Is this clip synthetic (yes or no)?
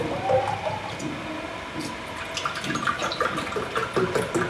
no